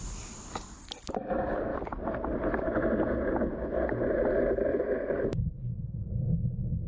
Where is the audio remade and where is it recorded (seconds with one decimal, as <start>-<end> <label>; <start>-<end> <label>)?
0.0-6.9 recorded

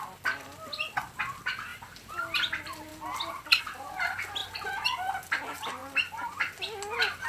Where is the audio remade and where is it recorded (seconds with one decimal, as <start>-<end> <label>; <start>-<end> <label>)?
0.0-1.7 recorded; 1.7-2.2 remade; 2.2-4.4 recorded; 4.4-5.1 remade; 5.1-7.3 recorded

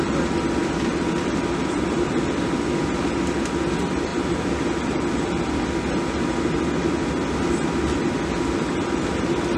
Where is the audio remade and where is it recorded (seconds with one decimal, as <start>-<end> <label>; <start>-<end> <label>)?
0.0-0.6 recorded; 0.6-2.8 remade; 2.8-4.1 recorded; 4.1-5.6 remade; 5.6-9.6 recorded

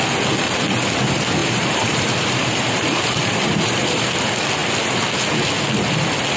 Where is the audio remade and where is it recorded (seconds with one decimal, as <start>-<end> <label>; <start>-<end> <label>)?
0.0-1.4 recorded; 1.4-4.1 remade; 4.1-6.4 recorded

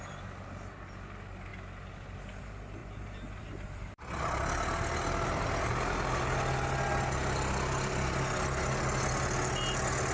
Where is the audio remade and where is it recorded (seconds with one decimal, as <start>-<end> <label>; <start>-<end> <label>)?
0.0-2.8 recorded; 2.8-3.4 remade; 3.4-10.1 recorded

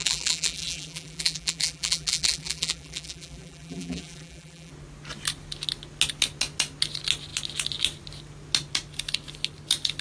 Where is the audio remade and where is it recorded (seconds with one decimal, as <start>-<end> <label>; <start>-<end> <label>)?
0.0-4.7 remade; 4.7-10.0 recorded

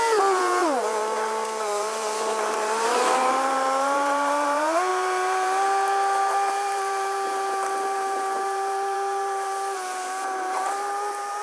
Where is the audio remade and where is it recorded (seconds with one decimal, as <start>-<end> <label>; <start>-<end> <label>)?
0.0-11.4 remade